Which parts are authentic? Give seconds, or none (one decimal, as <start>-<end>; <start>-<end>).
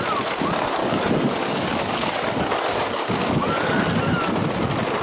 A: 0.0-0.8; 3.8-5.0